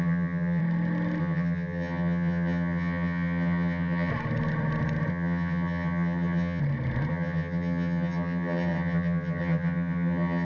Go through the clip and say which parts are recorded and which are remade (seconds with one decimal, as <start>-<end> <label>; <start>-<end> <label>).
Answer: 0.0-0.6 remade; 0.6-1.2 recorded; 1.2-4.1 remade; 4.1-5.1 recorded; 5.1-6.6 remade; 6.6-7.1 recorded; 7.1-10.4 remade